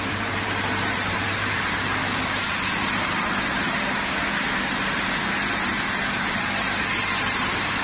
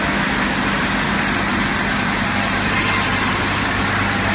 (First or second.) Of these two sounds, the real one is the second